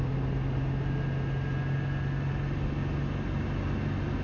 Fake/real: real